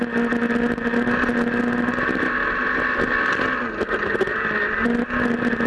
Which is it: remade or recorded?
recorded